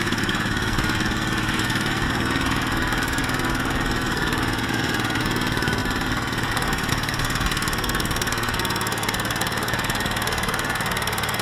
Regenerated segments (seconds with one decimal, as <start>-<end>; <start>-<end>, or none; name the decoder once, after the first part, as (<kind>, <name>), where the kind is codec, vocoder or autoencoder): 0.0-11.4 (codec, SNAC)

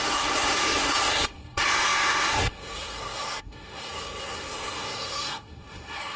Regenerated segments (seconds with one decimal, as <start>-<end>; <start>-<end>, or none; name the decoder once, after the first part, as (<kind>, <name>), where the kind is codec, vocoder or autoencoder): 0.0-6.2 (codec, SNAC)

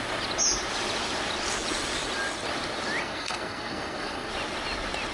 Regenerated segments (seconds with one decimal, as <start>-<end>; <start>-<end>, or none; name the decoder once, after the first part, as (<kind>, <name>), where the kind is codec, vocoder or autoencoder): 3.0-4.3 (codec, SNAC)

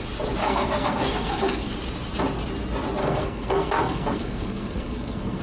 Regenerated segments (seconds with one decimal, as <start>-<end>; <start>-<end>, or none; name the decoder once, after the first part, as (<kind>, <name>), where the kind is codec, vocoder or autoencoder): 0.4-1.7 (codec, SNAC); 3.0-5.4

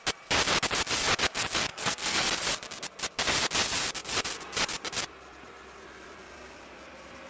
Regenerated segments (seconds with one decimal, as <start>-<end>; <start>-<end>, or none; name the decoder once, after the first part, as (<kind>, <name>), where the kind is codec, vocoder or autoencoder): 1.7-2.3 (codec, SNAC)

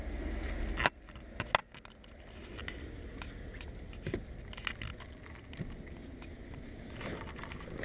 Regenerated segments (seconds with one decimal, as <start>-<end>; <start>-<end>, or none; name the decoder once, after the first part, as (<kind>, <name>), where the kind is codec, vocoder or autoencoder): none

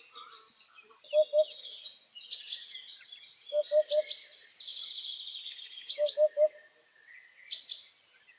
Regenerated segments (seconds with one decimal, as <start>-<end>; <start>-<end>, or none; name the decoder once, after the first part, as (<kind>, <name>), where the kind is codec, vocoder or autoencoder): none

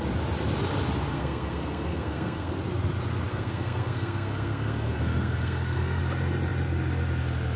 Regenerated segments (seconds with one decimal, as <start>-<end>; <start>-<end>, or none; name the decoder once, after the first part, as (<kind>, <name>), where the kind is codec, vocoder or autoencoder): 1.1-2.5 (codec, SNAC); 3.3-6.0